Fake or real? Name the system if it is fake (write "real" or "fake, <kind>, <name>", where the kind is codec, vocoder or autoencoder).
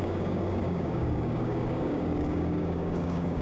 fake, codec, DAC